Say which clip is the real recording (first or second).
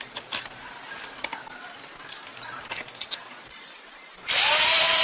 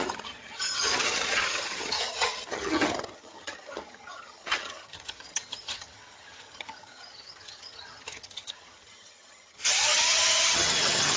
first